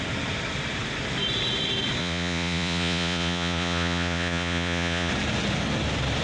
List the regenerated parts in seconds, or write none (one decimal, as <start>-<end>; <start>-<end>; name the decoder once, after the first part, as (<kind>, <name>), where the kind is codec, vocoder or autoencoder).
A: 2.0-5.1 (vocoder, Vocos)